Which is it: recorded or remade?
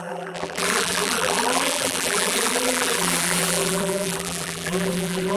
remade